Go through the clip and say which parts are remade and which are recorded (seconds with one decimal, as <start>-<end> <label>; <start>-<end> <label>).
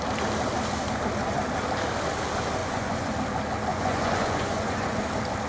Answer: 0.0-2.6 recorded; 2.6-3.1 remade; 3.1-3.7 recorded; 3.7-5.0 remade; 5.0-5.5 recorded